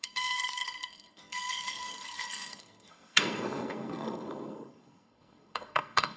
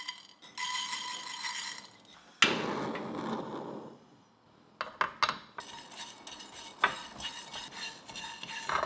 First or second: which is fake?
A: first